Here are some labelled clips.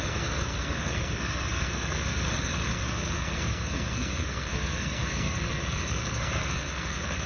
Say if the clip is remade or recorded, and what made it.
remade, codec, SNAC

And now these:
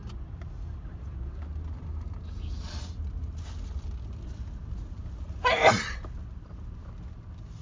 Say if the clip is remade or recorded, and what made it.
recorded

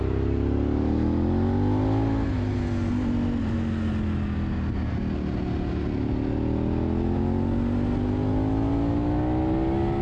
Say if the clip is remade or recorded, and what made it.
recorded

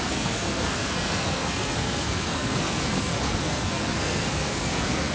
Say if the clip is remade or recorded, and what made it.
remade, codec, SNAC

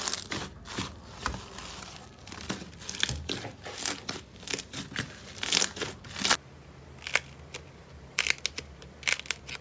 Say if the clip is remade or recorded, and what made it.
recorded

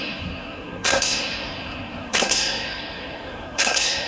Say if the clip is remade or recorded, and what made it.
remade, codec, SNAC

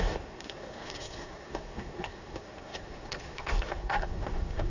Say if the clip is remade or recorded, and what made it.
remade, codec, SNAC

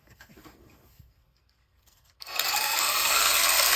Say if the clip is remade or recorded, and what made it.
remade, codec, SNAC